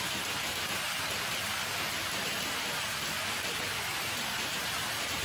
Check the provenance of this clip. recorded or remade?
remade